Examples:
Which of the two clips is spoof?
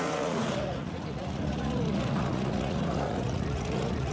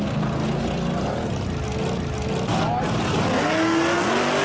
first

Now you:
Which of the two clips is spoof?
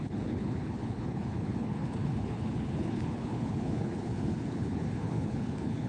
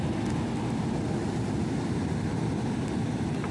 first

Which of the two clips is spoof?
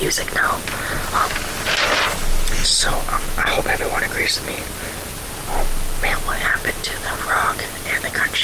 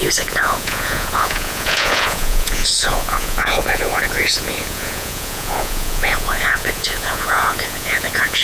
second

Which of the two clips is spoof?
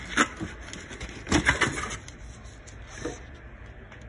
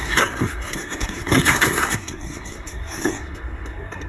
second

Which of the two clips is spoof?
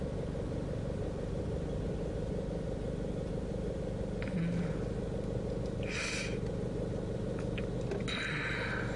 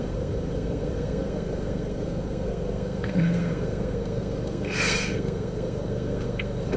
second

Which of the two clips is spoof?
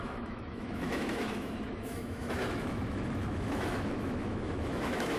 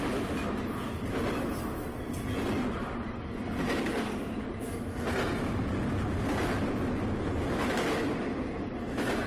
first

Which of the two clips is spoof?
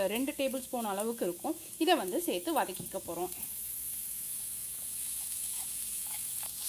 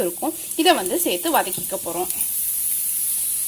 first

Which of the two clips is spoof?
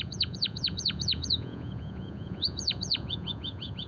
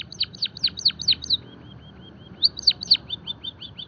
first